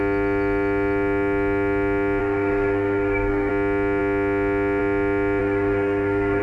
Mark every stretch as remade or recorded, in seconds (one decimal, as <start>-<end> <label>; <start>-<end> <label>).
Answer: 0.0-2.2 recorded; 2.2-3.5 remade; 3.5-5.4 recorded; 5.4-6.4 remade